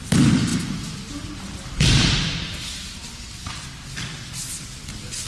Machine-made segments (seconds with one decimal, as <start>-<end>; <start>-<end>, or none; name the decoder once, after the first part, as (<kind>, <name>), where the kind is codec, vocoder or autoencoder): 0.5-3.6 (vocoder, BigVGAN v2)